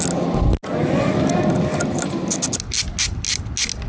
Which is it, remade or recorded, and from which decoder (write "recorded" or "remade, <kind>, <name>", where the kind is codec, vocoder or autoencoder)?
recorded